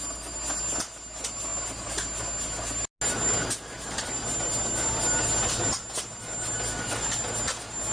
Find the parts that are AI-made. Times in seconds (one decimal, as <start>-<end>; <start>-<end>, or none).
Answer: none